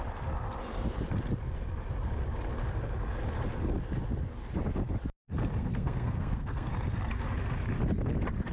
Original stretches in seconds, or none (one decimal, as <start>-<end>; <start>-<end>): 0.0-5.6; 6.7-8.5